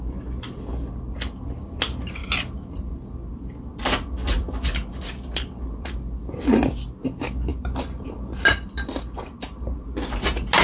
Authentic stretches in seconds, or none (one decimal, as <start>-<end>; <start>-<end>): 0.0-10.6